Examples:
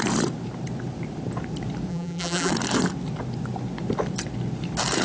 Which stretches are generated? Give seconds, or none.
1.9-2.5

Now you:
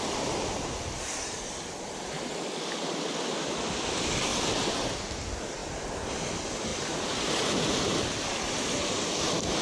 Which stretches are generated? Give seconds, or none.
0.0-4.3; 4.9-9.6

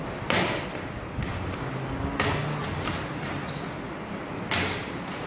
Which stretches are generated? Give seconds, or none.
2.6-4.2

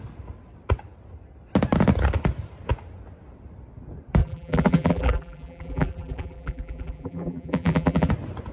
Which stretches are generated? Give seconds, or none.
4.2-8.1

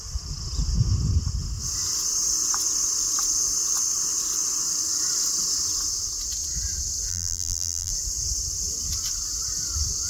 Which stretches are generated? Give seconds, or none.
7.1-7.9

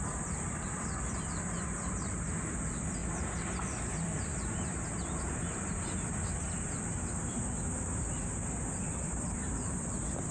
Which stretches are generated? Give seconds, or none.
0.0-3.0; 3.6-4.3; 8.9-10.3